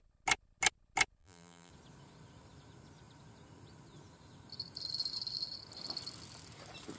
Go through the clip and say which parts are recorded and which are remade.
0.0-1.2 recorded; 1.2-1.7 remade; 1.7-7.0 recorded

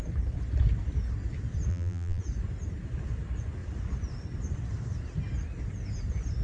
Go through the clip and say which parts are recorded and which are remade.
0.0-1.7 recorded; 1.7-2.2 remade; 2.2-6.4 recorded

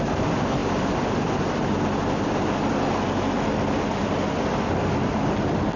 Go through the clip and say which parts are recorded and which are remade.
0.0-5.8 recorded

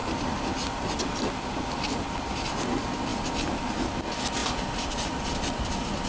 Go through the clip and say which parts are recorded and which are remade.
0.0-4.4 recorded; 4.4-5.2 remade; 5.2-6.1 recorded

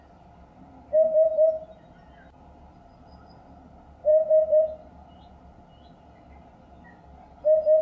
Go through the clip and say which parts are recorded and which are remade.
0.0-1.3 recorded; 1.3-1.9 remade; 1.9-4.1 recorded; 4.1-5.3 remade; 5.3-7.8 recorded

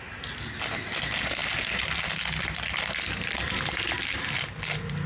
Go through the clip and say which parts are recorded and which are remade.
0.0-1.4 recorded; 1.4-4.3 remade; 4.3-5.1 recorded

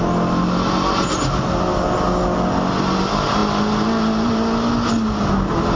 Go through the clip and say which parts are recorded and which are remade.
0.0-5.8 recorded